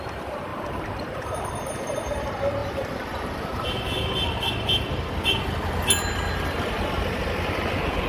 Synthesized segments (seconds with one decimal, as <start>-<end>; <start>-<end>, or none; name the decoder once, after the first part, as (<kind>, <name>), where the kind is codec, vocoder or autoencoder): 0.5-2.1 (vocoder, BigVGAN v2); 2.6-5.4